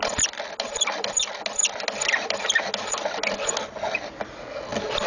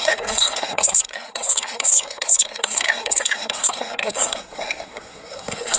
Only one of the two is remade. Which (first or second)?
second